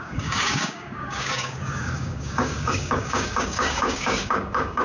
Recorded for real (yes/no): no